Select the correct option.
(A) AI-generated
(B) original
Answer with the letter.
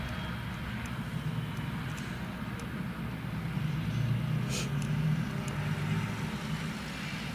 B